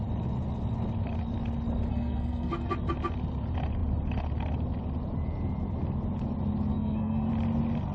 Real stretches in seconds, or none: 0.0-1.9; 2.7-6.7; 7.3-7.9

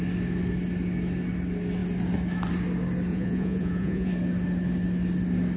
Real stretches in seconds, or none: 0.0-3.1; 4.1-5.6

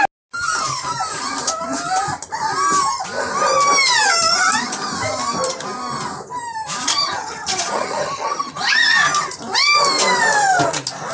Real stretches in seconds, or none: 0.0-6.9; 8.7-11.1

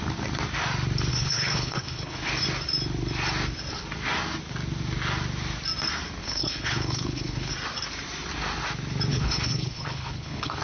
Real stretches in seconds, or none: 0.0-1.1; 2.3-6.2; 7.5-9.1

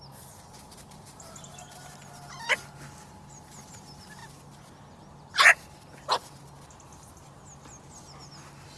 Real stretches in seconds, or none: 0.0-8.8

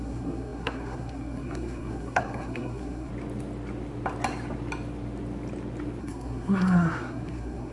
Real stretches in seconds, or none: 3.1-6.0

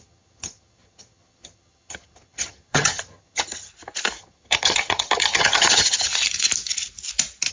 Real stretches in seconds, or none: 3.7-4.2; 6.1-7.5